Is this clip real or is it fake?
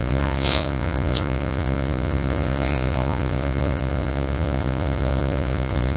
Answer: fake